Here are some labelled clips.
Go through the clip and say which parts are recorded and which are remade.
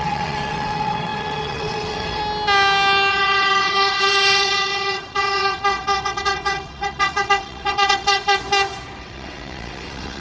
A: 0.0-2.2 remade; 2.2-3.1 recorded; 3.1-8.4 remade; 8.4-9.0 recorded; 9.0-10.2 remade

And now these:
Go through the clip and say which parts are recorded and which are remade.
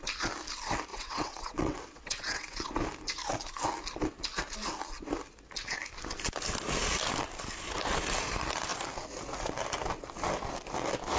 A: 0.0-0.9 recorded; 0.9-2.7 remade; 2.7-11.2 recorded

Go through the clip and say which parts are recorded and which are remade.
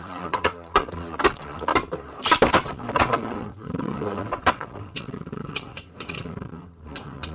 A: 0.0-1.7 remade; 1.7-2.5 recorded; 2.5-7.3 remade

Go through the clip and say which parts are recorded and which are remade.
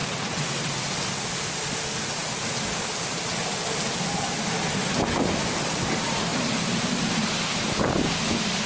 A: 0.0-0.7 remade; 0.7-8.7 recorded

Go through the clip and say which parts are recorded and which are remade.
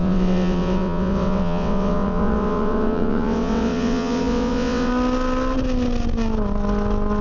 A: 0.0-4.9 remade; 4.9-7.2 recorded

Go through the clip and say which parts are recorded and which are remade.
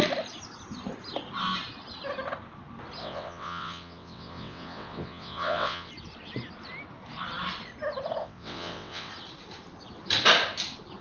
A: 0.0-3.0 recorded; 3.0-5.9 remade; 5.9-8.2 recorded; 8.2-9.1 remade; 9.1-11.0 recorded